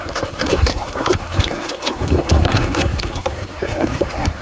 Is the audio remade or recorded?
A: remade